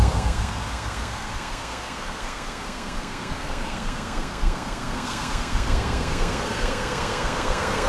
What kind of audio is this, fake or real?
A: fake